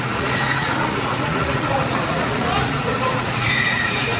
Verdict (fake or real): fake